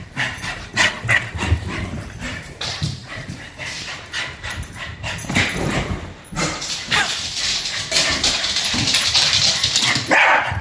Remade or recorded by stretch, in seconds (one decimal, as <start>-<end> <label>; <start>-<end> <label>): 0.0-0.7 remade; 0.7-1.6 recorded; 1.6-9.4 remade; 9.4-10.6 recorded